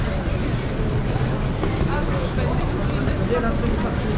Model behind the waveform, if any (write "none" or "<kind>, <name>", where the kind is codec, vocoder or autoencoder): none